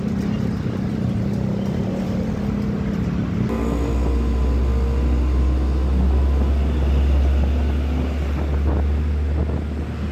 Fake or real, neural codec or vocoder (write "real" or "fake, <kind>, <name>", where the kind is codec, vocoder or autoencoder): real